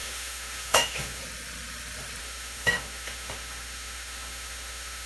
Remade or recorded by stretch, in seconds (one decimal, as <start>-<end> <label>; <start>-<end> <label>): 0.0-1.2 remade; 1.2-2.2 recorded; 2.2-5.1 remade